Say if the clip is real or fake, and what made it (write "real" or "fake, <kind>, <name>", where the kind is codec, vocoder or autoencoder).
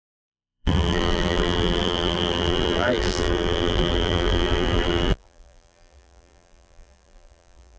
fake, vocoder, BigVGAN v2